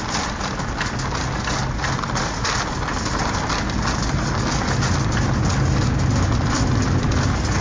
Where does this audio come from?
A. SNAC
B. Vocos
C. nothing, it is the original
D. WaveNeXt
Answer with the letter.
C